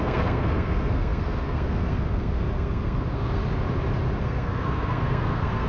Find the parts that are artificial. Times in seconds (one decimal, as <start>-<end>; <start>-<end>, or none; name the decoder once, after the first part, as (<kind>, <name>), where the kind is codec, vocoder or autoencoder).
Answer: 0.0-3.4 (codec, SNAC); 4.2-5.7